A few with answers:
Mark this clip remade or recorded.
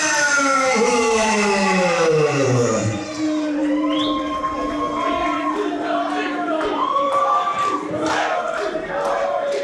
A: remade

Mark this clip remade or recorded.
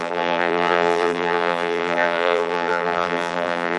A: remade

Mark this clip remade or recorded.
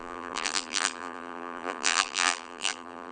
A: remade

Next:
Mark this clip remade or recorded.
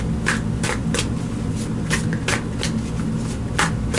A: recorded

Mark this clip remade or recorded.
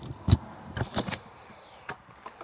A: remade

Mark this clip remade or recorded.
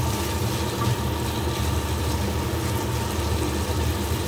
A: recorded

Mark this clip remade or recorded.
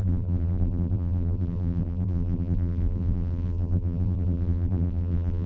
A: remade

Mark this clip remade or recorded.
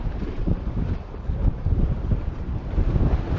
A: remade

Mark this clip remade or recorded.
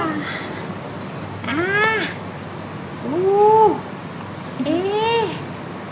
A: recorded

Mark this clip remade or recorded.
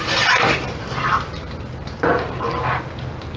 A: remade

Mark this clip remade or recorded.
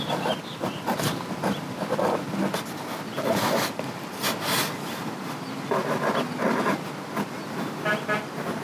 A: recorded